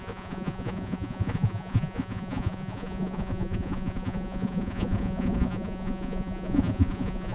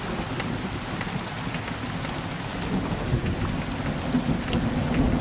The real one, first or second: second